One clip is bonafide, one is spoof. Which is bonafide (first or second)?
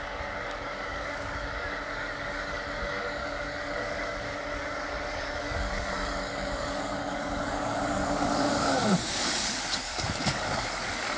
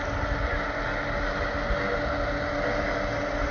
second